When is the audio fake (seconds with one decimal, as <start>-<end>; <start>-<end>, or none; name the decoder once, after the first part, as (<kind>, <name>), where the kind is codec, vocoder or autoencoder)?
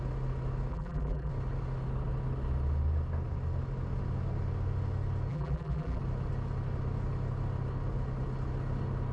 0.7-1.3 (vocoder, BigVGAN v2); 5.3-6.0